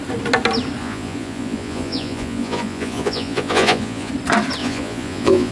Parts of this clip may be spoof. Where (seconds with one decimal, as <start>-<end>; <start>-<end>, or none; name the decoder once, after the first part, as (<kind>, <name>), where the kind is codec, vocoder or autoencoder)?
0.8-4.1 (vocoder, Vocos); 4.6-5.5